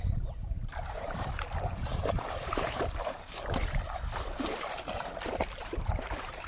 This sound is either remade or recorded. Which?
remade